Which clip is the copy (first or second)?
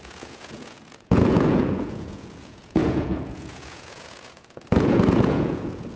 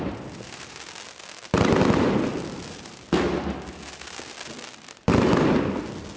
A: first